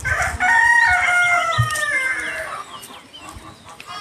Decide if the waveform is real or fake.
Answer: real